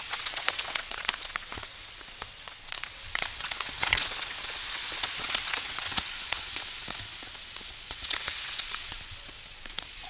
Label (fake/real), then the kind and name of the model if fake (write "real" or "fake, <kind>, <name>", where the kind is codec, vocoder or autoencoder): fake, vocoder, WaveNeXt